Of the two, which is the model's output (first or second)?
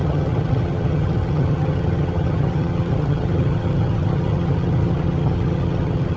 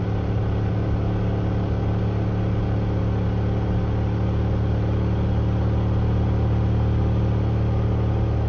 first